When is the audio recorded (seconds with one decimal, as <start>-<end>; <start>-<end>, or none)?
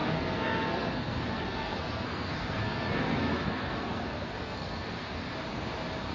5.3-6.1